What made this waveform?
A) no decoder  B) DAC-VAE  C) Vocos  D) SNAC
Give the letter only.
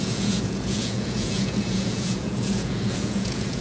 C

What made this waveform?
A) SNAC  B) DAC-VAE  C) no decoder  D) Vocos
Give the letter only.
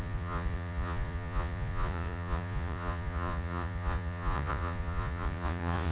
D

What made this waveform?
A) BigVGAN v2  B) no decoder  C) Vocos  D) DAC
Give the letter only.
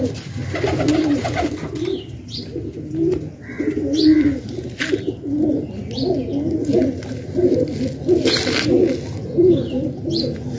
B